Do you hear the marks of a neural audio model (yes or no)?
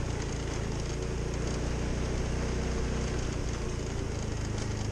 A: no